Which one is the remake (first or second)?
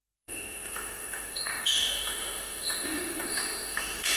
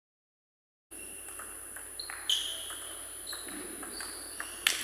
first